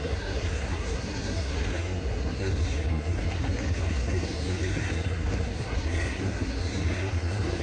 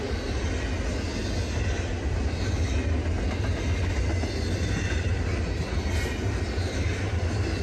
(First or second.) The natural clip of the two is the second